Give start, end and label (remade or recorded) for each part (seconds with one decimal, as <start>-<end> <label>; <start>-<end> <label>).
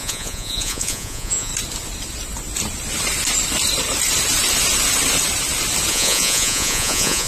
0.0-1.5 remade; 1.5-5.9 recorded; 5.9-7.3 remade